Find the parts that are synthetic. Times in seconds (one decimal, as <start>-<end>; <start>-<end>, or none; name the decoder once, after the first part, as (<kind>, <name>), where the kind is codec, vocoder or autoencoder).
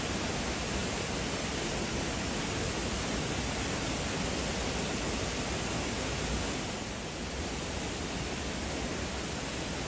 none